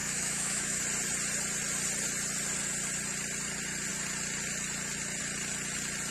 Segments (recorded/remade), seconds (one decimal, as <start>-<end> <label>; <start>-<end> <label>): 0.0-0.8 remade; 0.8-6.1 recorded